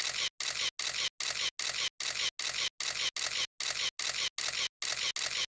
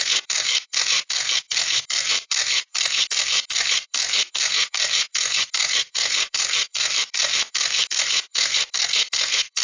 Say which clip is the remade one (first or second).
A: second